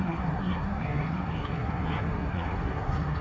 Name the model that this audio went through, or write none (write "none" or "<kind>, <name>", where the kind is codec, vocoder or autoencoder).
codec, SNAC